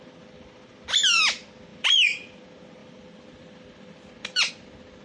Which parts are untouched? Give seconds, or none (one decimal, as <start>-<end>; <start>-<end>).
0.0-1.7; 2.4-2.8; 4.5-5.0